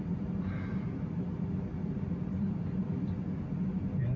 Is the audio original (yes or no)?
yes